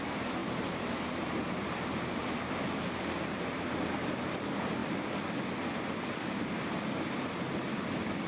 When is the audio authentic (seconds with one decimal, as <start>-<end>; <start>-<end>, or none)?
0.0-0.4; 1.4-8.3